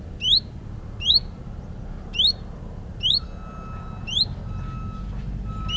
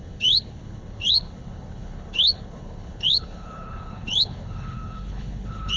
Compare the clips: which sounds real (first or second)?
first